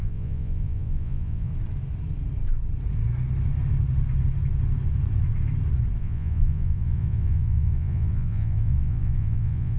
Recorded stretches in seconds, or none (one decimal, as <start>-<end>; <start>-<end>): 1.5-6.0